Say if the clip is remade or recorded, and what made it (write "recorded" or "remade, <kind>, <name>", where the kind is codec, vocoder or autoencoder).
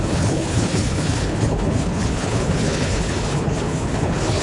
remade, codec, HILCodec